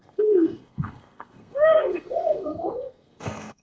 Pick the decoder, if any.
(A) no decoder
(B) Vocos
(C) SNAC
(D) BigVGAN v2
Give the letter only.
C